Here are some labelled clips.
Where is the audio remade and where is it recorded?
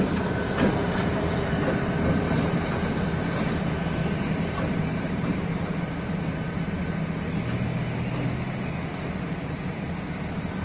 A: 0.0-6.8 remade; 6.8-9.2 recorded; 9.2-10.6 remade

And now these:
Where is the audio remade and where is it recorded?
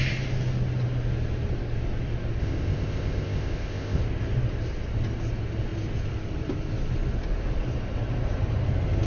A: 0.0-2.4 recorded; 2.4-4.0 remade; 4.0-9.1 recorded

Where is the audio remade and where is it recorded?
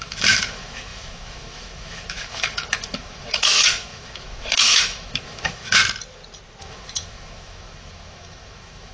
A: 0.0-5.8 remade; 5.8-6.6 recorded; 6.6-8.9 remade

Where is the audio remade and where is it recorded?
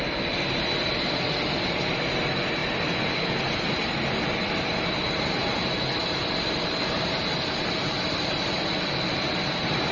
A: 0.0-2.6 remade; 2.6-3.1 recorded; 3.1-5.4 remade; 5.4-6.0 recorded; 6.0-9.9 remade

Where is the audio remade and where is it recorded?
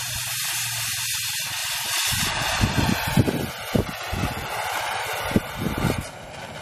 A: 0.0-6.6 recorded